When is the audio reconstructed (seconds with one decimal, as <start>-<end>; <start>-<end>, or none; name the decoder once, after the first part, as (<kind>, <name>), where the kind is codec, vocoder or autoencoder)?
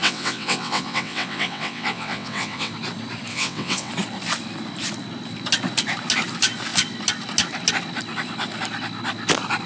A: 0.0-2.7 (vocoder, WaveNeXt); 3.3-3.9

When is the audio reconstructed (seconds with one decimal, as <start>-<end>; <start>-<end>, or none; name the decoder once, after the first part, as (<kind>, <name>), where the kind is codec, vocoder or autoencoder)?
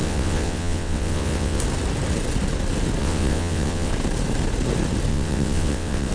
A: 0.0-1.6 (vocoder, WaveNeXt); 3.0-3.9; 5.1-6.1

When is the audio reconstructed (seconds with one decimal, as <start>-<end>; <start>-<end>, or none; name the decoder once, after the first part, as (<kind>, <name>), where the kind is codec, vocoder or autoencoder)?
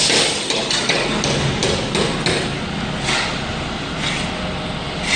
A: none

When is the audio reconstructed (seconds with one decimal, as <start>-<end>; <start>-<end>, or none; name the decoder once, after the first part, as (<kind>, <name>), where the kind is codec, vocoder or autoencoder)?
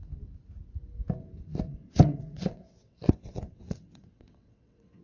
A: 1.7-5.0 (vocoder, WaveNeXt)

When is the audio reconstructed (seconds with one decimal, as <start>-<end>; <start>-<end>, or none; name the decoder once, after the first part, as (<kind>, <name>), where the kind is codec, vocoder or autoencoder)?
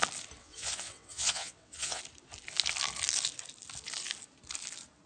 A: 0.4-2.0 (vocoder, WaveNeXt)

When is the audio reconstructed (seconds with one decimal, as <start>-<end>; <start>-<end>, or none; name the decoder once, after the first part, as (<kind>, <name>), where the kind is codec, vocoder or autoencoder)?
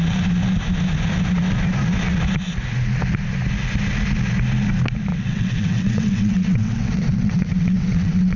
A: 5.1-8.4 (vocoder, WaveNeXt)